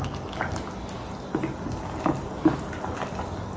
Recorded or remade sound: recorded